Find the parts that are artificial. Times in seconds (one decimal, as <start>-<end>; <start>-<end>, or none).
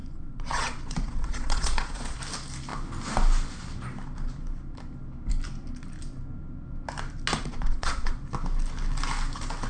0.0-2.2; 7.4-8.2